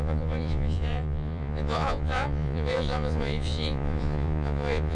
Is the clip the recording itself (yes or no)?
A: no